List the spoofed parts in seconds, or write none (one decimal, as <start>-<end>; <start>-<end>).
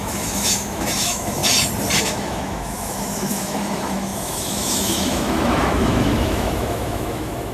0.0-1.4; 2.0-7.5